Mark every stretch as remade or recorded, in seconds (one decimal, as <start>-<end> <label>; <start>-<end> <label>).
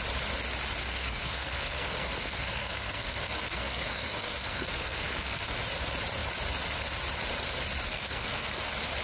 0.0-0.8 recorded; 0.8-5.5 remade; 5.5-7.9 recorded; 7.9-8.6 remade; 8.6-9.0 recorded